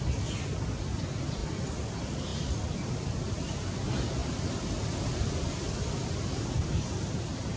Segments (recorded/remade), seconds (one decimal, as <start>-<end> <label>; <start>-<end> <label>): 0.0-7.6 recorded